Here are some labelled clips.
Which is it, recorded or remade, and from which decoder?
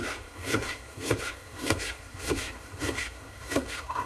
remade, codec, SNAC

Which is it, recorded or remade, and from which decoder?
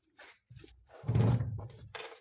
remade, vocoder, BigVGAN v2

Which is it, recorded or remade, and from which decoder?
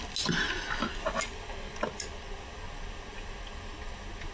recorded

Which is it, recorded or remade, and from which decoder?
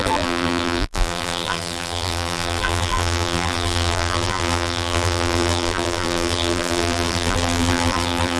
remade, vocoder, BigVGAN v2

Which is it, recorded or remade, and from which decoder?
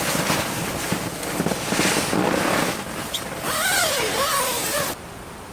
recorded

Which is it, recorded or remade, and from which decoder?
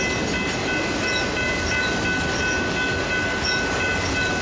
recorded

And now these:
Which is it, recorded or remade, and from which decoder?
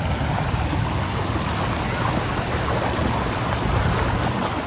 recorded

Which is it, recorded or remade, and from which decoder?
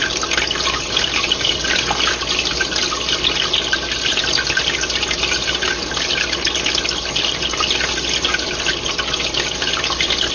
recorded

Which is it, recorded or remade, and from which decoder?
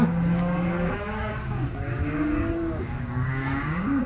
remade, codec, DAC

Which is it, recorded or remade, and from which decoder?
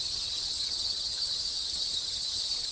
remade, vocoder, HiFi-GAN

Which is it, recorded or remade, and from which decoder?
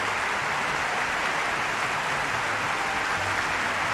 recorded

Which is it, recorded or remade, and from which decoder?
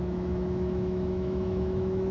remade, autoencoder, DAC-VAE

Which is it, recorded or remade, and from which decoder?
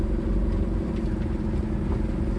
remade, vocoder, BigVGAN v2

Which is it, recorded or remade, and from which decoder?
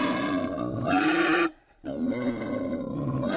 recorded